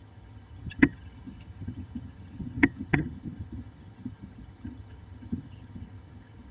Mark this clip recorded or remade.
remade